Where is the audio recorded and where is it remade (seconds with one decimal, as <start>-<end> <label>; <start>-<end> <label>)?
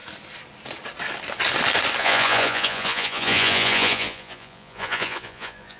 0.0-2.0 recorded; 2.0-5.8 remade